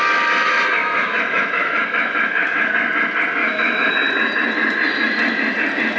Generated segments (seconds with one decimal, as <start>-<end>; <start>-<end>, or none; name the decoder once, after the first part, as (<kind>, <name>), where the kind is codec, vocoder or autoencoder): 0.8-2.7 (autoencoder, DAC-VAE); 3.4-3.9